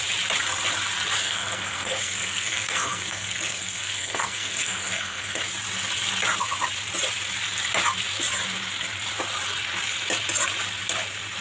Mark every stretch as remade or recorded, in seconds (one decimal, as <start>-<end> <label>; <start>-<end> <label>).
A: 0.0-1.2 recorded; 1.2-5.4 remade; 5.4-11.4 recorded